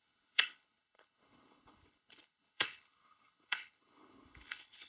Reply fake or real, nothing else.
fake